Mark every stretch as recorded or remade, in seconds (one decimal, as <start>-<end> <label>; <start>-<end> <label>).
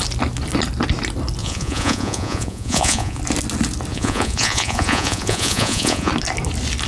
0.0-1.4 recorded; 1.4-3.2 remade; 3.2-3.9 recorded; 3.9-6.1 remade; 6.1-6.9 recorded